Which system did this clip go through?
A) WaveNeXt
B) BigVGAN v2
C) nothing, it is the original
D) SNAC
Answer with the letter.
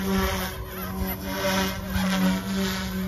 C